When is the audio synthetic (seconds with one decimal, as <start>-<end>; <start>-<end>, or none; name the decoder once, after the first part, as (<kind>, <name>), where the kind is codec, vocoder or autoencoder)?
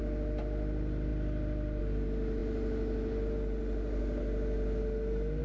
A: none